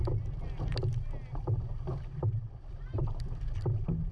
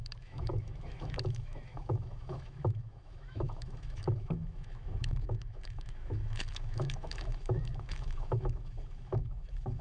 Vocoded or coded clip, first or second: second